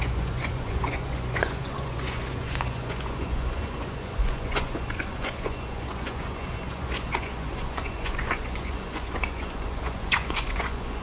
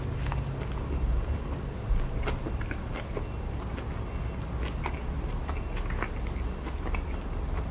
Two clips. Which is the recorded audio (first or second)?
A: second